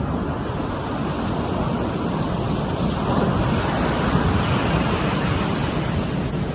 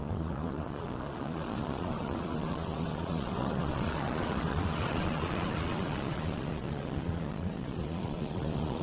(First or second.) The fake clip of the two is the second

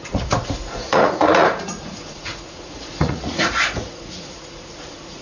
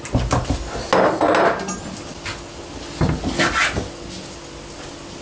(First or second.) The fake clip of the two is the first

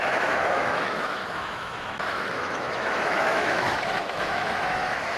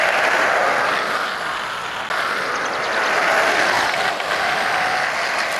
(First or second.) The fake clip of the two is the first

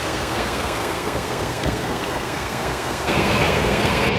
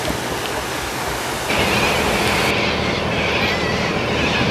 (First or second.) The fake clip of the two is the first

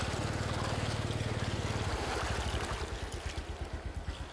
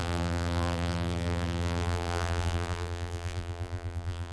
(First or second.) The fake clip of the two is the second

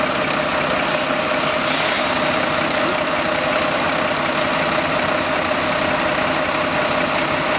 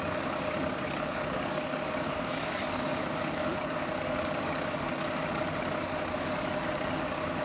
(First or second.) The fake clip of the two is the second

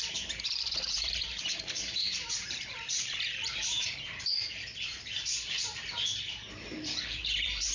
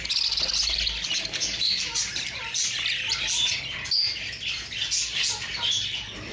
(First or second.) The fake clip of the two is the first